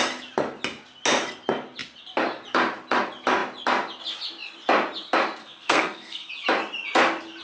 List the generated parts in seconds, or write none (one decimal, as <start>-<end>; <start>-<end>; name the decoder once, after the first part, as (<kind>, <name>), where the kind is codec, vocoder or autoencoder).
5.4-6.3 (codec, SNAC)